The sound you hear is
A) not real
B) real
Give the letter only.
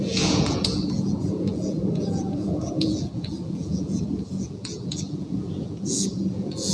A